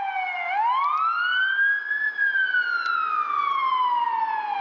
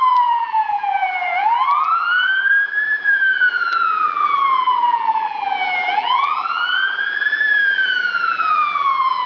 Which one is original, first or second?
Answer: first